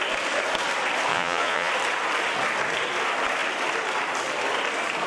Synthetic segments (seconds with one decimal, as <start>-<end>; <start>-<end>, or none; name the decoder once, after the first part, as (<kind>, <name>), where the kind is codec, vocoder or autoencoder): 1.1-1.7 (vocoder, Vocos)